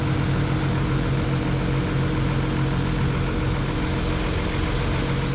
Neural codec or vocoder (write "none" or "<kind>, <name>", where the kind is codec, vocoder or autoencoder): none